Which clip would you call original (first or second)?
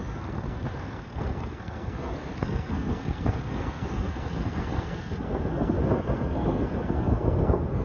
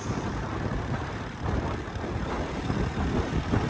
second